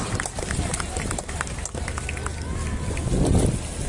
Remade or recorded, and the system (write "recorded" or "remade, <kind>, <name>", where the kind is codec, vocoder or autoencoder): recorded